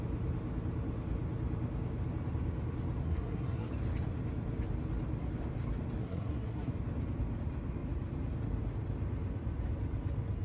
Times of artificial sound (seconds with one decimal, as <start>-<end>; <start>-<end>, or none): 3.0-3.7; 6.0-6.7